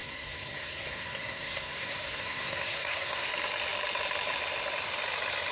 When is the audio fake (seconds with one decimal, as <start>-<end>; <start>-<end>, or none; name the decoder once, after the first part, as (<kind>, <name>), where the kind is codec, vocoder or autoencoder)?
0.0-3.3 (codec, SNAC)